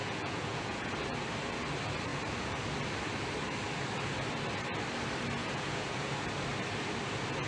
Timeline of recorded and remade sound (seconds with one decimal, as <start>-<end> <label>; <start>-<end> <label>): 0.0-0.9 remade; 0.9-5.4 recorded; 5.4-6.1 remade; 6.1-7.5 recorded